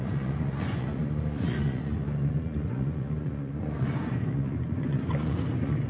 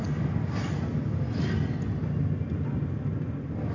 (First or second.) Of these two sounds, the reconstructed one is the first